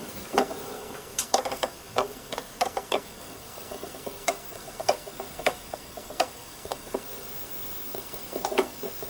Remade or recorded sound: remade